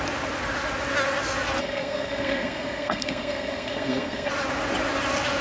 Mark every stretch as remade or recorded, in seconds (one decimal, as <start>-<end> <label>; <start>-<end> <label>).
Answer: 0.0-1.6 recorded; 1.6-4.3 remade; 4.3-5.4 recorded